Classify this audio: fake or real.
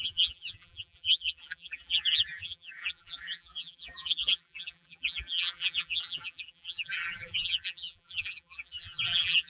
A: fake